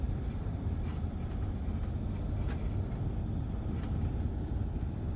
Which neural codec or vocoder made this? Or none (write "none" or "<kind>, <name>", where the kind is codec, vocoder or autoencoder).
none